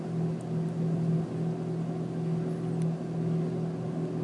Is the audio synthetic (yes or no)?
no